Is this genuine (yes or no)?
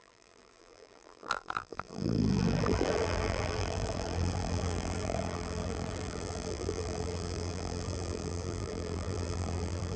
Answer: no